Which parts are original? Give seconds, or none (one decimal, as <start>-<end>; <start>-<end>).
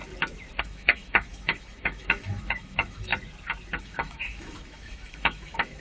0.0-0.6; 3.1-3.8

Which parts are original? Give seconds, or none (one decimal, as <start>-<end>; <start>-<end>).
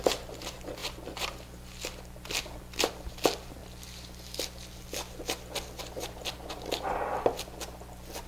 0.0-8.3